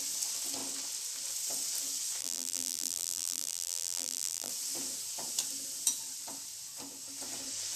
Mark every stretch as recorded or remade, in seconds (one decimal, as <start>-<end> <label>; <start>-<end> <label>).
0.0-2.2 recorded; 2.2-4.5 remade; 4.5-7.8 recorded